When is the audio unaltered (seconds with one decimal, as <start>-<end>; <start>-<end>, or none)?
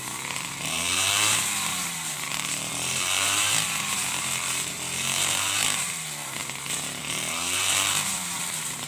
6.4-7.0